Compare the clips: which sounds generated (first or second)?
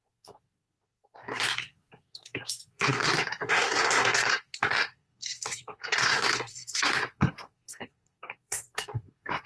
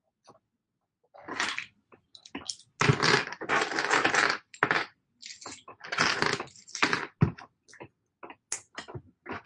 first